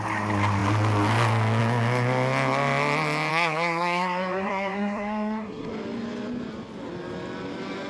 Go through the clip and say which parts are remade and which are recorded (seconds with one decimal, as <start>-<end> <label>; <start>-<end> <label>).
0.0-3.3 recorded; 3.3-5.7 remade; 5.7-7.9 recorded